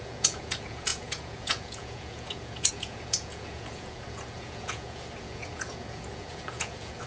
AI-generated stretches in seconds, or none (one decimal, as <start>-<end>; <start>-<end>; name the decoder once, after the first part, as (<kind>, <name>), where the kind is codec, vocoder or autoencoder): 0.0-7.1 (vocoder, Vocos)